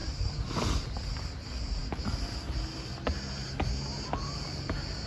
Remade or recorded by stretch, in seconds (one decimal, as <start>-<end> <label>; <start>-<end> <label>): 0.0-5.1 recorded